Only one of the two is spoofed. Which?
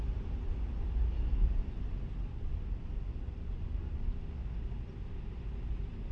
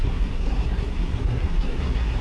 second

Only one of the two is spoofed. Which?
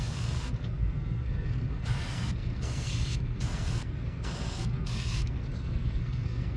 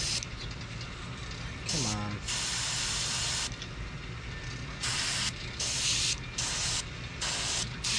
first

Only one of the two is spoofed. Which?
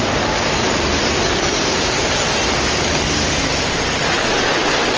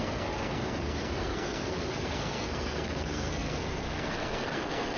second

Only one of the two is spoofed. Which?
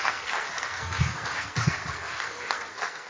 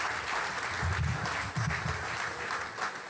first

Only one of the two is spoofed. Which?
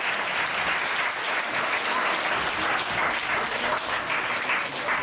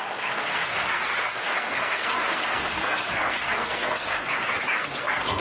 second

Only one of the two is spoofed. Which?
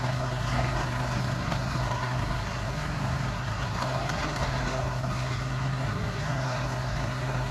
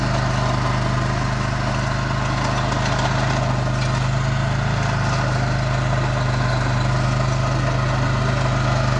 first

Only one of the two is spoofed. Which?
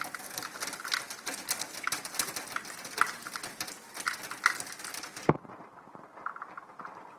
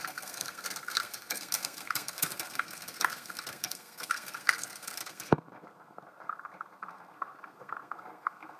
second